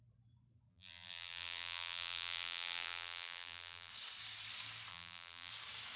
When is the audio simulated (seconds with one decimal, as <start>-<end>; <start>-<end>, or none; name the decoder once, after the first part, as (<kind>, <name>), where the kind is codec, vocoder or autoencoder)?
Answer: 0.7-3.9 (vocoder, BigVGAN v2); 4.9-5.5